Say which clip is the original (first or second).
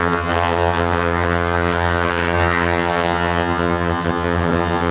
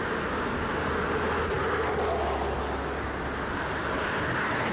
second